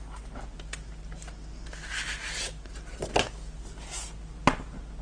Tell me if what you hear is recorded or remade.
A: recorded